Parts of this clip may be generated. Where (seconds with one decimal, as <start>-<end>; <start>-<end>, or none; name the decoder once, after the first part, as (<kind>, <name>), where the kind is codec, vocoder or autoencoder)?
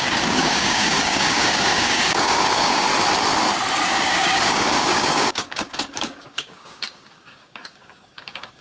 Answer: 0.0-2.9 (codec, DAC); 3.7-8.6